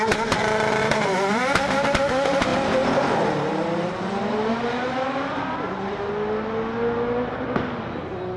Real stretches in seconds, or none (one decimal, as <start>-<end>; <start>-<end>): 0.0-0.8; 2.1-2.5; 6.1-8.4